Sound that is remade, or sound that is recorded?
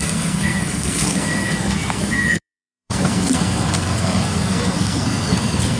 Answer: remade